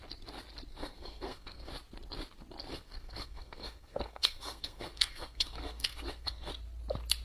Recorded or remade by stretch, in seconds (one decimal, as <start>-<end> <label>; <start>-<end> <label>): 0.0-0.7 recorded; 0.7-1.7 remade; 1.7-2.7 recorded; 2.7-6.5 remade; 6.5-7.2 recorded